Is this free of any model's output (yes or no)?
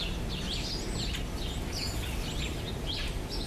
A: yes